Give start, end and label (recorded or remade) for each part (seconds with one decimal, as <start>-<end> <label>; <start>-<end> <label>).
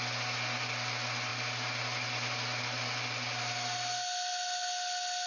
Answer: 0.0-5.3 recorded